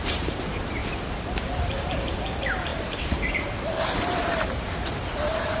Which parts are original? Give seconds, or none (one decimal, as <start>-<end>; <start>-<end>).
0.8-1.4